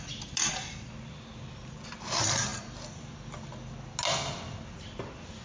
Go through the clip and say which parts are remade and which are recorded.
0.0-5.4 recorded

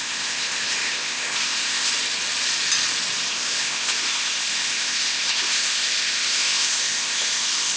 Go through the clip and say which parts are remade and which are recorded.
0.0-1.9 remade; 1.9-3.3 recorded; 3.3-7.8 remade

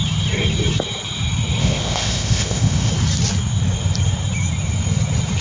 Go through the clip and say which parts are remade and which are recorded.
0.0-1.6 recorded; 1.6-2.9 remade; 2.9-5.4 recorded

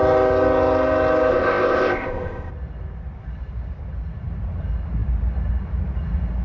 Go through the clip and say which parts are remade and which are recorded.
0.0-1.3 recorded; 1.3-2.5 remade; 2.5-6.4 recorded

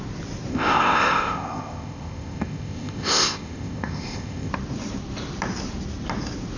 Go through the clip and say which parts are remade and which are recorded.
0.0-0.5 recorded; 0.5-4.5 remade; 4.5-6.6 recorded